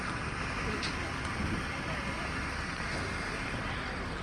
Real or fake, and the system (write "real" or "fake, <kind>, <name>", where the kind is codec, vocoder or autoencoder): real